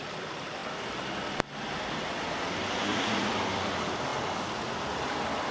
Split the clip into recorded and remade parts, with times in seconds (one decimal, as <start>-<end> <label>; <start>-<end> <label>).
0.0-2.9 recorded; 2.9-3.4 remade; 3.4-5.5 recorded